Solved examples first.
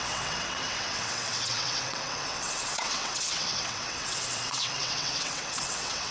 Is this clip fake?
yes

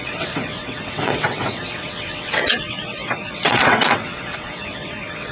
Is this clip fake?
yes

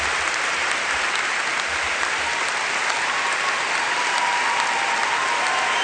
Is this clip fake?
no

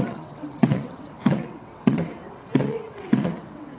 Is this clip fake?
yes